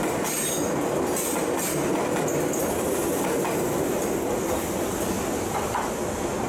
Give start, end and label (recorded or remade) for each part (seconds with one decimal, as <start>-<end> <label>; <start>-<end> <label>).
0.0-6.5 recorded